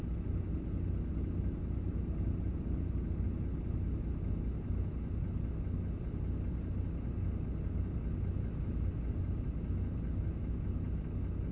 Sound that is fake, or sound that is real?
real